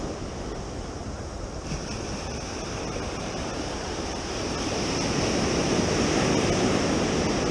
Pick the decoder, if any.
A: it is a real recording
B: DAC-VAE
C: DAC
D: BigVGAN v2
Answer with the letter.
A